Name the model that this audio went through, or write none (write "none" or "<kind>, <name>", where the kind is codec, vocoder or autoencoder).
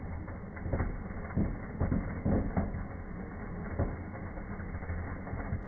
none